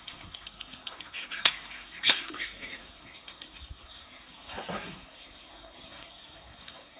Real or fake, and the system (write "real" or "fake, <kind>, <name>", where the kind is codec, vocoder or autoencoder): fake, codec, SNAC